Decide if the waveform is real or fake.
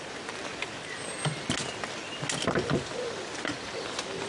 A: real